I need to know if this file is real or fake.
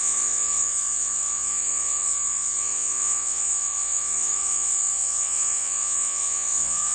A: fake